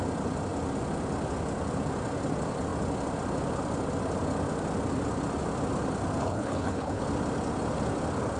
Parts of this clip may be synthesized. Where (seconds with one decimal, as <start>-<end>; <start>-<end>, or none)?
6.2-7.0